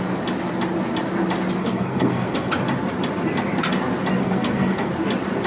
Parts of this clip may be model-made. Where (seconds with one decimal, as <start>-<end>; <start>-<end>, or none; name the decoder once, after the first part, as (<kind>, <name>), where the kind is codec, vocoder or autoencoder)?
1.6-2.5 (codec, SNAC); 4.2-4.9